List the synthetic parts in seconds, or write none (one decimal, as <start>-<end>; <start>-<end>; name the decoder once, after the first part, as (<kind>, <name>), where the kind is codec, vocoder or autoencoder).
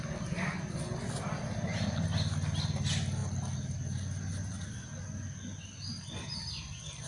none